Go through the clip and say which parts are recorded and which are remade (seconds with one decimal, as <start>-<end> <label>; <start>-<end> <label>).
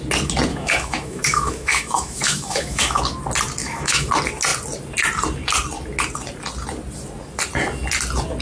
0.0-0.5 recorded; 0.5-3.0 remade; 3.0-3.6 recorded; 3.6-4.1 remade; 4.1-8.4 recorded